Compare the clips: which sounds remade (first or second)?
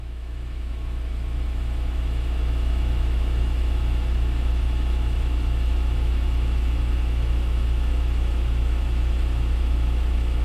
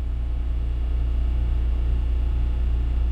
first